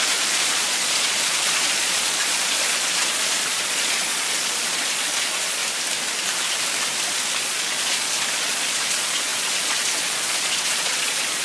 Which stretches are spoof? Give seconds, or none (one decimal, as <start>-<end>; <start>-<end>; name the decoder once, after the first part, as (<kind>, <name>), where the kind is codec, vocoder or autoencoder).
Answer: 0.0-5.6 (vocoder, Vocos); 7.4-11.4